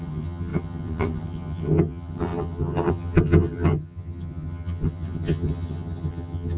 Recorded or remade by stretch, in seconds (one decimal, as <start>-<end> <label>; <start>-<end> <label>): 0.0-6.6 remade